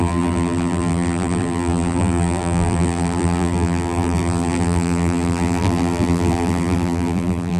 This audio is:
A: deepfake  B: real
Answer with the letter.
A